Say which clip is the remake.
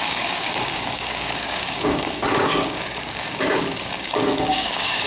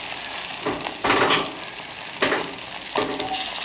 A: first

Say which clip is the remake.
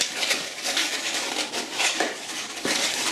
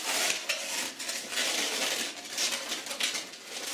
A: first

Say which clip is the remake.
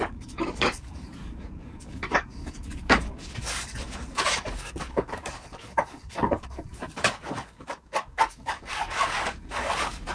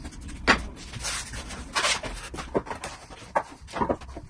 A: first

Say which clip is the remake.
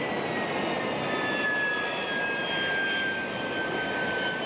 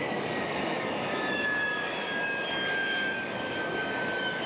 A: second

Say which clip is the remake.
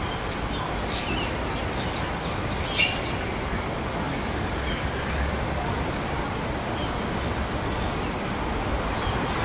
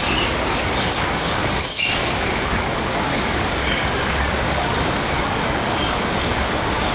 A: second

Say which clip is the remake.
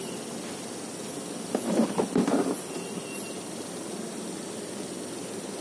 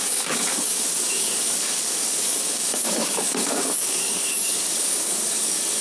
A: second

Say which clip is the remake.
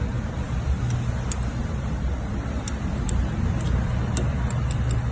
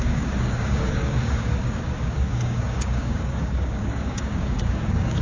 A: second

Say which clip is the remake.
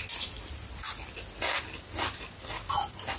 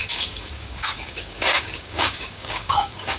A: second